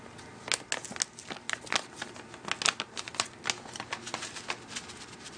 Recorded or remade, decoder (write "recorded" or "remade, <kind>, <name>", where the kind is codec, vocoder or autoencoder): recorded